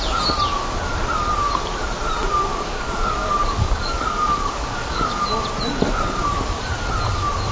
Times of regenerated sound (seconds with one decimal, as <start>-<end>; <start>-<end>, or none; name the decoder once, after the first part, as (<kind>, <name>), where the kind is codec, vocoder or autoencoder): 2.5-5.2 (codec, DAC)